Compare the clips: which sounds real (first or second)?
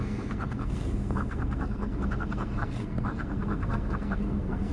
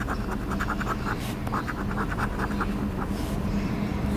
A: second